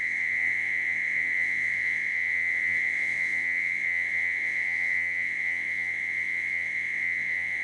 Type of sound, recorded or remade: remade